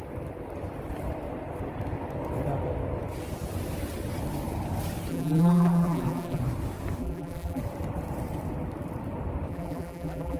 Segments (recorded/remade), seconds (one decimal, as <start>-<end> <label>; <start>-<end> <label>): 0.0-5.1 recorded; 5.1-6.4 remade; 6.4-7.0 recorded; 7.0-7.6 remade; 7.6-9.5 recorded; 9.5-10.4 remade